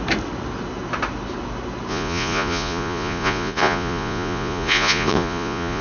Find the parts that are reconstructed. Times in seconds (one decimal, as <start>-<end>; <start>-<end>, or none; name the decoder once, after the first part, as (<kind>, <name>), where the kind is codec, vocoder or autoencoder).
1.9-5.8 (vocoder, Vocos)

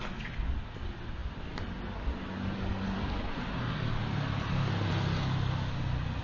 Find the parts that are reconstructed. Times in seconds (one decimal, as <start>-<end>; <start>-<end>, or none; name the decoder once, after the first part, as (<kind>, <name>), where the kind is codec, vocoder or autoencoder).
none

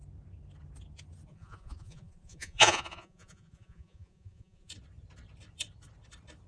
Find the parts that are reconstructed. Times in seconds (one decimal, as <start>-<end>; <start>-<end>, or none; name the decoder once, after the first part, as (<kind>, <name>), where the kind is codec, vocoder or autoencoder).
1.3-4.7 (vocoder, Vocos)

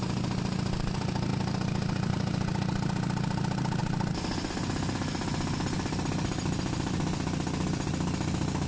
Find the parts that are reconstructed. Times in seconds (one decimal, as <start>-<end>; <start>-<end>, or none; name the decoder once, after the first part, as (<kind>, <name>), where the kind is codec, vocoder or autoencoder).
none

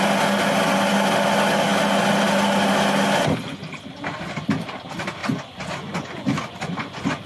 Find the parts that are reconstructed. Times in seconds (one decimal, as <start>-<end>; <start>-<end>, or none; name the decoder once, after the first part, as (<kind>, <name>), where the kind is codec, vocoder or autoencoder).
5.2-7.3 (vocoder, Vocos)

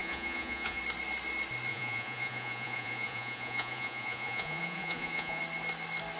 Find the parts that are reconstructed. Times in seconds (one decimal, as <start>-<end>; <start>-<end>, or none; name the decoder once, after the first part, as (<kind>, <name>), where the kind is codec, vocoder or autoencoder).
0.0-0.8 (vocoder, Vocos); 1.7-5.4

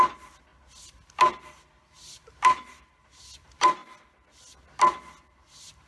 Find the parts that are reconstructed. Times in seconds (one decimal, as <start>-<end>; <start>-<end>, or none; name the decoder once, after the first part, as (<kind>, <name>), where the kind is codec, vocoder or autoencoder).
none

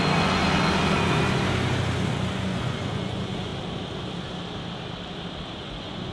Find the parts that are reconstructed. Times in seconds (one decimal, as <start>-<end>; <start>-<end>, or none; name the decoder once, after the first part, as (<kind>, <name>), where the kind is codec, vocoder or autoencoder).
0.0-0.4 (vocoder, Vocos); 2.3-3.5; 5.6-6.1